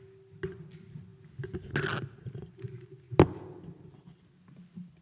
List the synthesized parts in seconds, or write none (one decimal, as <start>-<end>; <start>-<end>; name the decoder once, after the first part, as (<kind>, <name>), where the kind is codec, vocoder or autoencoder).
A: none